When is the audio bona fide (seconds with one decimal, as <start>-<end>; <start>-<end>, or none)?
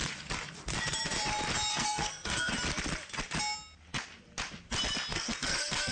0.0-1.7; 2.5-5.1